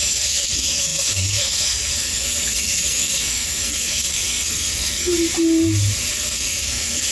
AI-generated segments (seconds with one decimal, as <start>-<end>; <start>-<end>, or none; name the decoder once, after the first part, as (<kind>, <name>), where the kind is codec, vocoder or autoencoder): 0.0-5.1 (codec, SNAC); 6.1-7.1